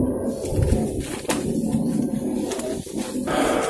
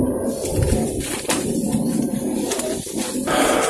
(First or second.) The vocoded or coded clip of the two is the second